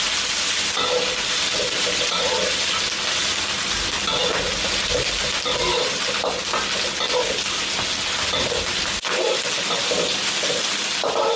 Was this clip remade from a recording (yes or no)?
no